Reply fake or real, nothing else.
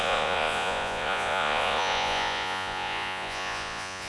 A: fake